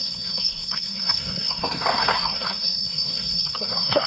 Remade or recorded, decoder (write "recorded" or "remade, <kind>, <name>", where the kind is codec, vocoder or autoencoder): remade, codec, SNAC